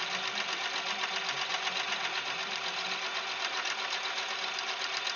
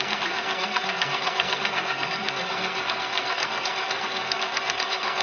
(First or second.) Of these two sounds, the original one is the first